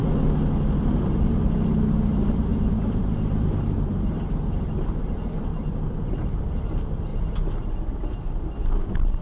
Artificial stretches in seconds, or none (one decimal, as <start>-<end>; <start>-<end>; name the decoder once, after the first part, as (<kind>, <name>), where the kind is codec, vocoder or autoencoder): 2.5-5.0 (vocoder, BigVGAN v2); 5.5-6.4